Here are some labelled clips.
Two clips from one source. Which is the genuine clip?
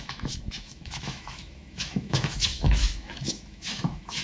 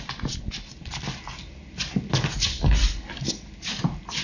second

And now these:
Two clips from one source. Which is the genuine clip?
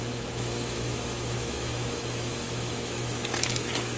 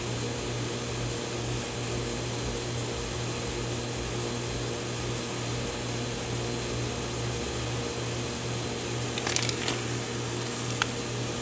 second